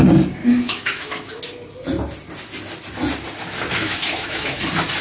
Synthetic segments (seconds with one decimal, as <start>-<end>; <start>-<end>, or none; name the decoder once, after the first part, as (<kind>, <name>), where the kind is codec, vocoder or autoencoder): 0.4-1.4 (autoencoder, DAC-VAE); 3.8-4.6

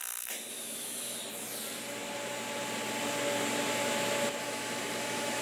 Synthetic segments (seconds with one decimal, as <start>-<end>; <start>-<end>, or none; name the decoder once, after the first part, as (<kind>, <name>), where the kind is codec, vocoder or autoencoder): 0.5-1.2 (autoencoder, DAC-VAE); 4.4-5.4

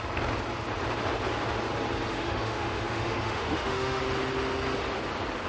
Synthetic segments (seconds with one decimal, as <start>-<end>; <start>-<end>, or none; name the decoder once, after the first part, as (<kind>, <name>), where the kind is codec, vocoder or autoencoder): 2.1-4.0 (autoencoder, DAC-VAE)

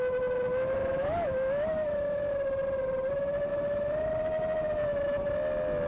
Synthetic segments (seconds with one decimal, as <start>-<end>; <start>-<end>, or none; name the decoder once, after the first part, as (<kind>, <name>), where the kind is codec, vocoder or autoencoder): 0.8-2.2 (autoencoder, DAC-VAE)